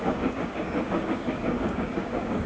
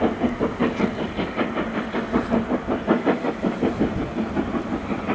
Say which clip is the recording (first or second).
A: second